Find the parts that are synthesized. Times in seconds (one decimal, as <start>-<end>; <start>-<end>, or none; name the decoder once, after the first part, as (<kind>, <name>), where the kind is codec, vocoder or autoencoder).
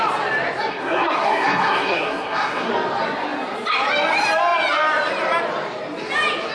0.7-2.7 (codec, SNAC)